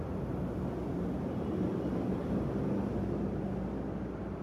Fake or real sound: real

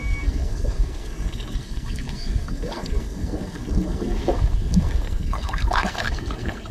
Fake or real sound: fake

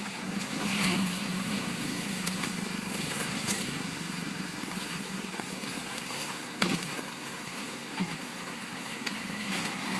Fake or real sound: fake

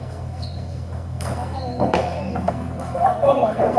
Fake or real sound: fake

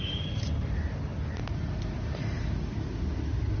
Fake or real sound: real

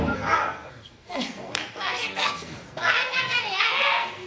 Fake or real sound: fake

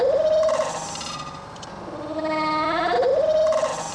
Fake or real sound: real